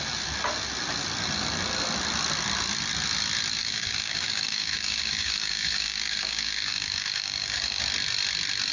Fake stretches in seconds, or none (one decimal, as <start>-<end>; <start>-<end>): 3.6-7.8